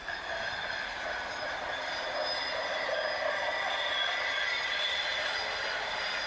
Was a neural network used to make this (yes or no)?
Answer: no